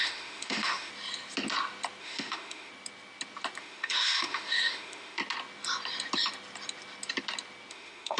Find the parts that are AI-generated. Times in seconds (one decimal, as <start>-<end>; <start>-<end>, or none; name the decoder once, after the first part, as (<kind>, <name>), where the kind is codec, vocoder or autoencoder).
0.0-0.9 (autoencoder, DAC-VAE); 2.0-2.7; 3.6-5.2; 7.7-8.2